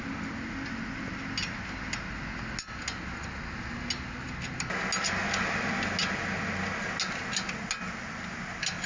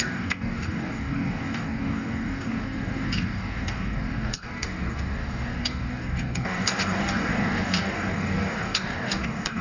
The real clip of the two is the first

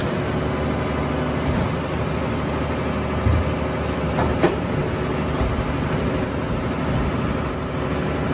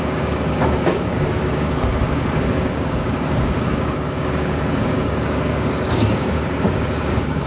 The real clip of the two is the first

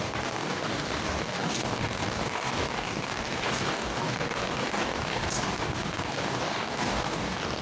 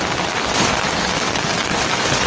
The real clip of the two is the second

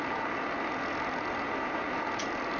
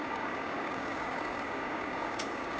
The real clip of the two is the first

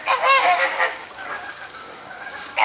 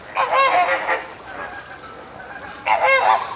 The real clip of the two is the second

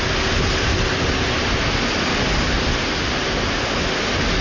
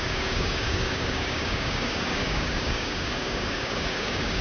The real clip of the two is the first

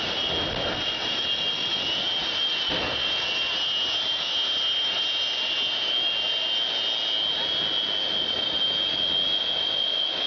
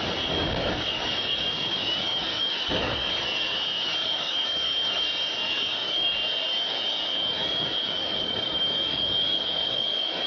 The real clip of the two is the first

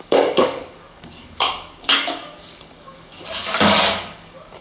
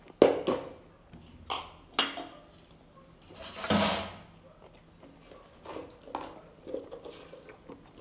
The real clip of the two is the second